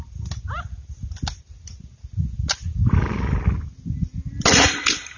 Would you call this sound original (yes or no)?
yes